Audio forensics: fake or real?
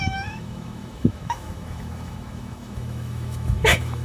fake